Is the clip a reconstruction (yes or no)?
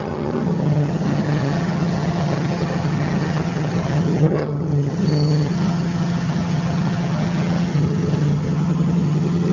yes